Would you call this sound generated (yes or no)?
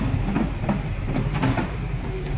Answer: yes